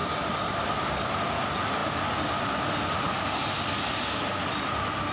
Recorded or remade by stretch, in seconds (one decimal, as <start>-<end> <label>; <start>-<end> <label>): 0.0-5.1 recorded